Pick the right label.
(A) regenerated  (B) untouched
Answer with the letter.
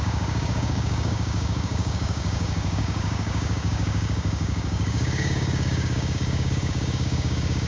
A